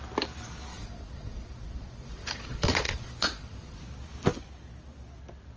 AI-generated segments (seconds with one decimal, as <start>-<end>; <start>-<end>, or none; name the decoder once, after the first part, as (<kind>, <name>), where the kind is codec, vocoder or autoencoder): 0.7-3.8 (vocoder, Vocos)